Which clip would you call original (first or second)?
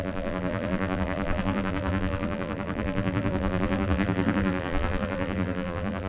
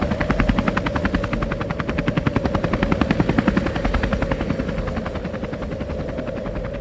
second